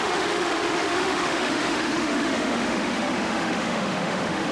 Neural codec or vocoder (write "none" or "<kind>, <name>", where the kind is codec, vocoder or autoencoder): autoencoder, DAC-VAE